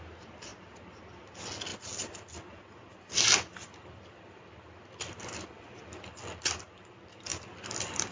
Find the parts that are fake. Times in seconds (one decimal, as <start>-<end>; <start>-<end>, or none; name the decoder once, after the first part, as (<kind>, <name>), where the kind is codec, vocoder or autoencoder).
0.5-1.2 (vocoder, BigVGAN v2); 1.7-6.4; 7.3-8.1